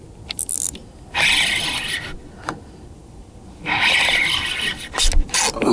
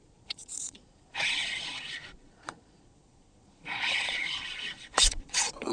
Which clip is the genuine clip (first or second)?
first